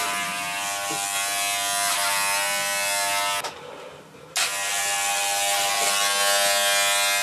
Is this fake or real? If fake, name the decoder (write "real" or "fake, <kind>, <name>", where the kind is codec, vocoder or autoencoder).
real